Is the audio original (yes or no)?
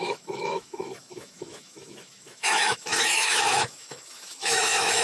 no